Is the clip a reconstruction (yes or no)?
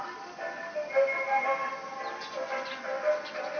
no